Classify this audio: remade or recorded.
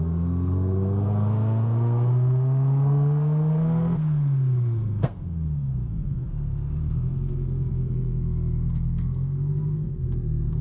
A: remade